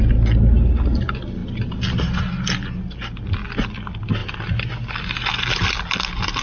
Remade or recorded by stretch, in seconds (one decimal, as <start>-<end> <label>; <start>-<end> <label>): 0.0-6.4 recorded